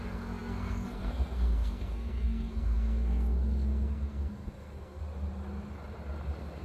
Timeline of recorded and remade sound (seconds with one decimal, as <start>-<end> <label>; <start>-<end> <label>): 0.0-5.0 remade; 5.0-6.6 recorded